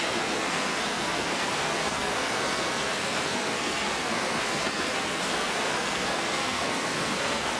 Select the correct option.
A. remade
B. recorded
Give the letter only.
A